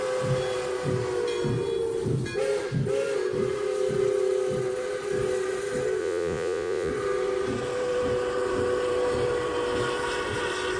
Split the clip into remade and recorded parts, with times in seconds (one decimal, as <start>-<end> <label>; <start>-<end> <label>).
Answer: 0.0-6.0 recorded; 6.0-6.9 remade; 6.9-10.8 recorded